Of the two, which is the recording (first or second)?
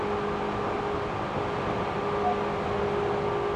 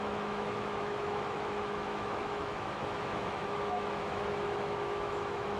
first